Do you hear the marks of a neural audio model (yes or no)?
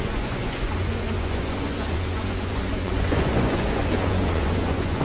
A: yes